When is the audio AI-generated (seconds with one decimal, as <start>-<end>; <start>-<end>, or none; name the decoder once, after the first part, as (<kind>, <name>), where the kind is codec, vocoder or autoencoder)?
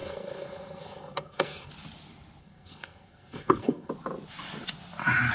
0.0-1.7 (codec, SNAC); 2.4-3.9